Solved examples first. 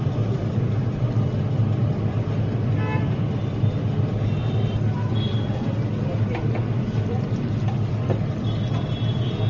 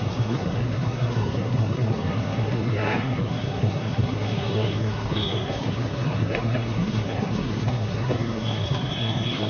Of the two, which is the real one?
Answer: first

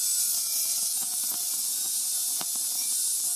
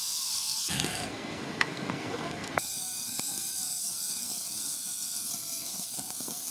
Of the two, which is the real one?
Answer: first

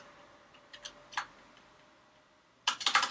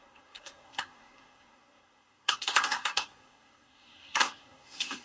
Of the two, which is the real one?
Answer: first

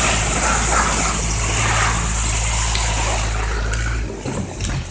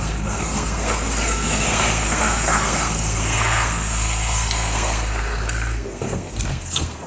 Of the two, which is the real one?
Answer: first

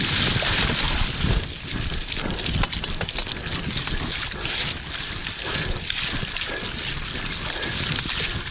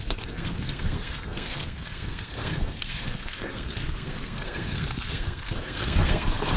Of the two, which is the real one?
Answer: first